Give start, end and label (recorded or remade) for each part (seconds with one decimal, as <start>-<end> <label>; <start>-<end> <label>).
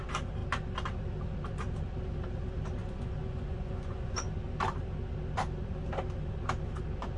0.0-2.8 recorded; 2.8-4.1 remade; 4.1-7.2 recorded